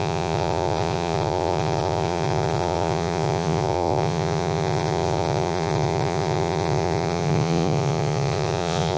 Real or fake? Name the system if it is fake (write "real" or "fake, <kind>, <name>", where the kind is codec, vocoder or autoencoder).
fake, vocoder, Vocos